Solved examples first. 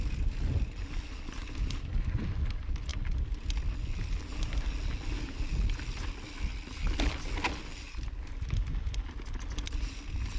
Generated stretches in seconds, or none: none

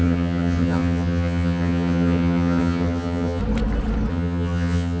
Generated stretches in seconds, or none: 0.0-3.4; 4.1-5.0

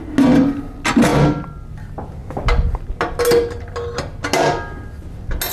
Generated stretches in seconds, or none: none

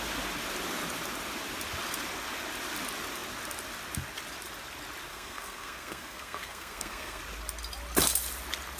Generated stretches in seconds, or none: 5.1-7.2